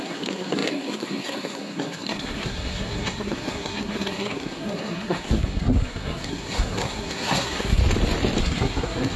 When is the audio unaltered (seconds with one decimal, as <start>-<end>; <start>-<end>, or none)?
7.8-8.4